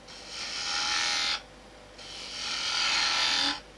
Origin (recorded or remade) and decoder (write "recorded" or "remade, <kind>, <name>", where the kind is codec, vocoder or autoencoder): recorded